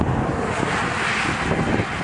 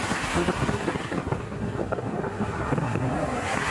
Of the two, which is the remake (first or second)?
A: second